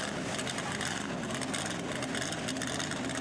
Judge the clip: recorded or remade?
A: recorded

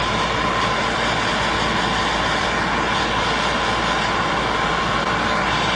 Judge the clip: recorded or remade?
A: recorded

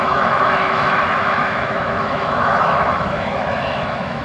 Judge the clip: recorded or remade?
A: remade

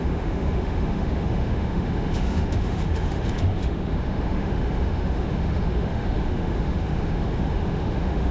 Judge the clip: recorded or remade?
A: remade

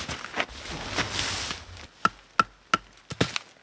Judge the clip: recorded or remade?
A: recorded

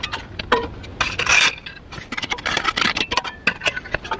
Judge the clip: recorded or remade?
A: recorded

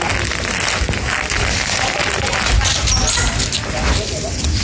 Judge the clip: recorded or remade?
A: recorded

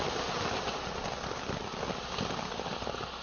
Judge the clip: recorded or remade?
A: recorded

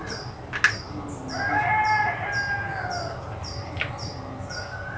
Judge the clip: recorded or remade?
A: recorded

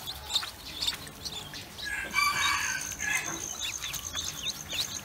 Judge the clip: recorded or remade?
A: recorded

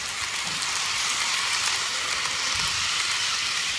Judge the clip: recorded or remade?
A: recorded